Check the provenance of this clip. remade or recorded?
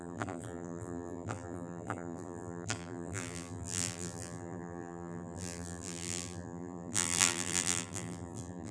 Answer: remade